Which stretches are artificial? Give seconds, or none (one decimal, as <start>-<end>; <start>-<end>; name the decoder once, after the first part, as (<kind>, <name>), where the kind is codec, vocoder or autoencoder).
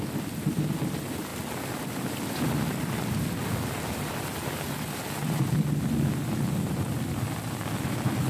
none